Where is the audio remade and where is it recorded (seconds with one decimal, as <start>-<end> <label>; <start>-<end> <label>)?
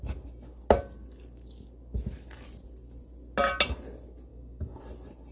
0.0-4.3 recorded; 4.3-4.8 remade; 4.8-5.3 recorded